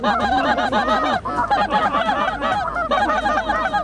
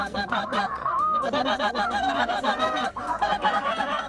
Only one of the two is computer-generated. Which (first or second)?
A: second